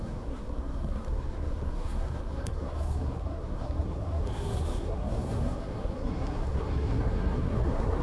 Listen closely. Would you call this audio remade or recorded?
remade